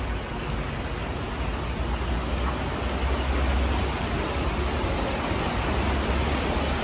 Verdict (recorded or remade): recorded